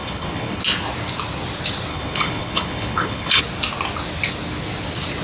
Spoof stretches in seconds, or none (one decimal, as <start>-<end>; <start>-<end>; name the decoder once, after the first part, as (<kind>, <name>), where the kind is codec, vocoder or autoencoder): 0.0-0.6 (codec, HILCodec); 1.9-3.4